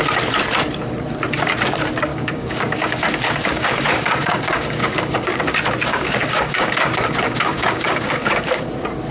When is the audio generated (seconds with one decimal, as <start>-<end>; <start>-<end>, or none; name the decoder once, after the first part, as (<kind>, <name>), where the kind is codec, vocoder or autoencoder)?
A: 2.1-5.4 (codec, DAC); 5.9-8.7